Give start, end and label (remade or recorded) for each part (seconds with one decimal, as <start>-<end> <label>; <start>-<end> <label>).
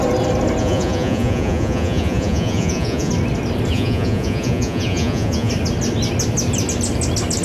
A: 0.0-0.6 recorded; 0.6-3.1 remade; 3.1-3.7 recorded; 3.7-5.5 remade; 5.5-7.4 recorded